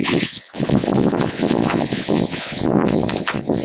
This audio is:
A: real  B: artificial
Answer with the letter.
B